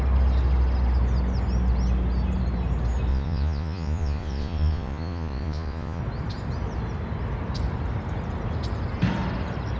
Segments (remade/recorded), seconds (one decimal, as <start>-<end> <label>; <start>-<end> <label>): 0.0-3.1 recorded; 3.1-6.0 remade; 6.0-9.8 recorded